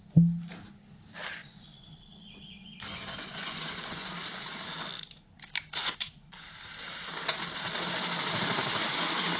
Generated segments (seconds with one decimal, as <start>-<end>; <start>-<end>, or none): 1.4-4.1; 5.8-6.4